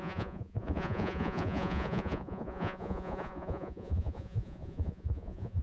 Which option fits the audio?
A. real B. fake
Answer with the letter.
B